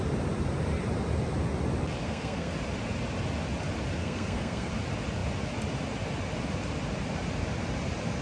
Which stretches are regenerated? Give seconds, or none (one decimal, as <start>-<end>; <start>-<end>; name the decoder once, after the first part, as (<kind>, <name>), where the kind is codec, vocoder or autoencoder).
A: 2.0-2.5 (codec, SNAC); 4.0-4.7